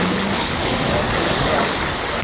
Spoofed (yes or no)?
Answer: yes